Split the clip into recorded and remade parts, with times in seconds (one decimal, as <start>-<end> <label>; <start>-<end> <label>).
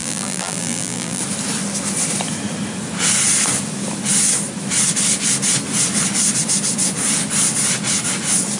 0.0-1.2 remade; 1.2-8.6 recorded